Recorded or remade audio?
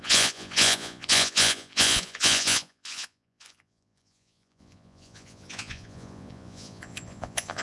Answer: remade